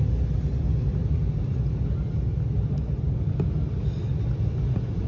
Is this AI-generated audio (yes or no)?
no